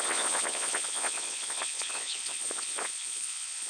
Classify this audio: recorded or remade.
remade